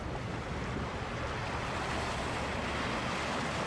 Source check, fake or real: real